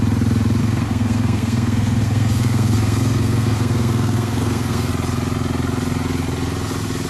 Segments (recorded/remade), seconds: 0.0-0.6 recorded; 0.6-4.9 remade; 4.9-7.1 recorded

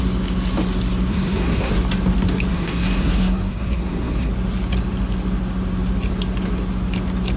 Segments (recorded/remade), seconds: 0.0-1.1 recorded; 1.1-1.7 remade; 1.7-2.5 recorded; 2.5-4.3 remade; 4.3-7.4 recorded

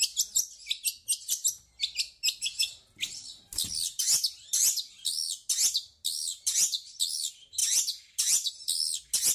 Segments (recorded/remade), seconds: 0.0-9.3 recorded

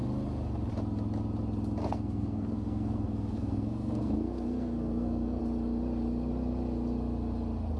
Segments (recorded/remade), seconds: 0.0-1.8 recorded; 1.8-5.4 remade; 5.4-7.8 recorded

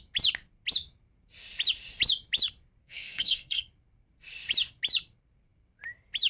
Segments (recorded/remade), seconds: 0.0-2.8 recorded; 2.8-3.7 remade; 3.7-6.3 recorded

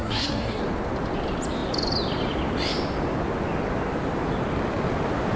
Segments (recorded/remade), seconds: 0.0-0.6 remade; 0.6-5.4 recorded

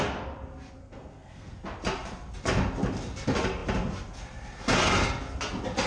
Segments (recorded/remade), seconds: 0.0-0.8 recorded; 0.8-1.5 remade; 1.5-5.9 recorded